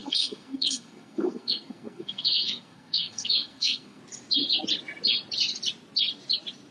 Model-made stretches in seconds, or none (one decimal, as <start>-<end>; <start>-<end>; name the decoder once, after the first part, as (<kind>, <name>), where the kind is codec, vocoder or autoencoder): 0.0-4.0 (codec, SNAC)